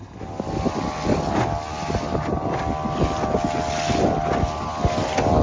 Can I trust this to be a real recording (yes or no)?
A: yes